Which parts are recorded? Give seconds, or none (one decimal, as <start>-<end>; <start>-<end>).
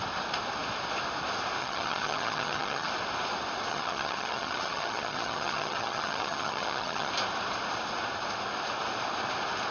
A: 0.0-1.6; 2.9-3.7; 7.1-9.7